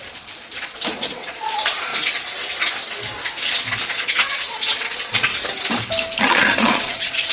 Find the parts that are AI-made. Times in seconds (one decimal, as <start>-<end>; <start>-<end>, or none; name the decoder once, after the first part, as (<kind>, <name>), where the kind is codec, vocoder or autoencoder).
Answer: 0.0-1.9 (vocoder, Vocos); 3.9-5.3; 6.2-7.3